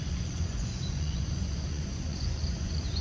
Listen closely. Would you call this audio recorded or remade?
remade